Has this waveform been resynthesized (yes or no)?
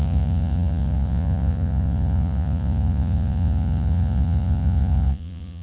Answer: yes